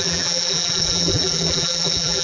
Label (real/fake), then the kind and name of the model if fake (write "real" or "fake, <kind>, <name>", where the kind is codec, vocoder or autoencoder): fake, vocoder, BigVGAN v2